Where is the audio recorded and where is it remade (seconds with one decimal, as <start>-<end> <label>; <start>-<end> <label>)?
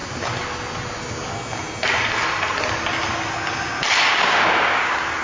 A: 0.0-4.1 recorded; 4.1-5.2 remade